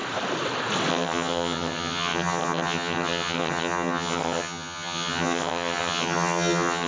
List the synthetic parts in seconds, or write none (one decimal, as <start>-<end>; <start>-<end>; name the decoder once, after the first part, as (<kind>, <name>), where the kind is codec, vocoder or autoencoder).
0.9-6.9 (vocoder, HiFi-GAN)